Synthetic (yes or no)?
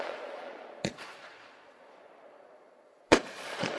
yes